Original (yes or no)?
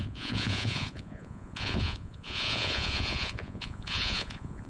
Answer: no